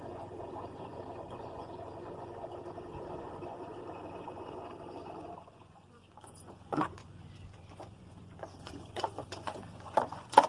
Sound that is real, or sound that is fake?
fake